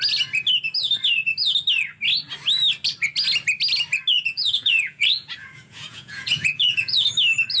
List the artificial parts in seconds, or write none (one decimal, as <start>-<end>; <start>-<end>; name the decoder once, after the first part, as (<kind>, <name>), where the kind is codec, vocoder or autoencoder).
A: 4.1-7.1 (vocoder, Vocos)